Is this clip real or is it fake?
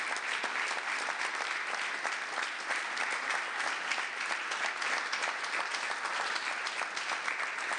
real